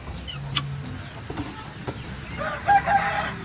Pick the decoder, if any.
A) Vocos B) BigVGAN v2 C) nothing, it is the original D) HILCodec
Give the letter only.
C